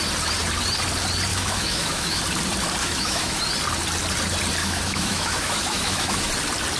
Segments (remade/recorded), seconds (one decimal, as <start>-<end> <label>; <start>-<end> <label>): 0.0-1.3 recorded; 1.3-2.2 remade; 2.2-2.8 recorded; 2.8-3.4 remade; 3.4-4.6 recorded; 4.6-6.3 remade; 6.3-6.8 recorded